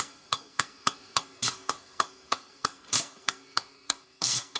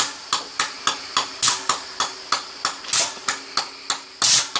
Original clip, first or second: second